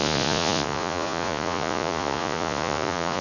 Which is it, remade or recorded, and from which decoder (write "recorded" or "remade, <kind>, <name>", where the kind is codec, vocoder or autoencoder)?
remade, vocoder, Vocos